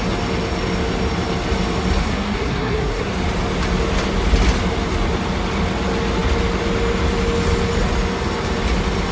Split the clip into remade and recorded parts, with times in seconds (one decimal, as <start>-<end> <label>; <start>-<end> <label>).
0.0-2.0 recorded; 2.0-3.1 remade; 3.1-9.1 recorded